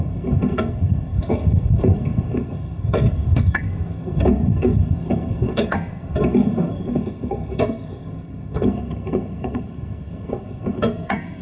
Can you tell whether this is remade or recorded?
remade